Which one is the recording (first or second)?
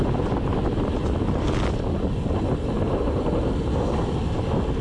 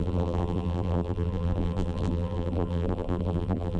first